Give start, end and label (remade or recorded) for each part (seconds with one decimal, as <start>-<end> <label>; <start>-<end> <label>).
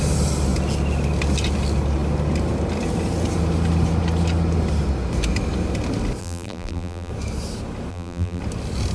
0.0-6.2 recorded; 6.2-7.1 remade; 7.1-7.9 recorded; 7.9-8.4 remade; 8.4-8.9 recorded